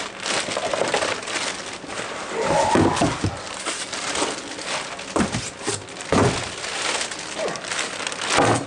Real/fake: real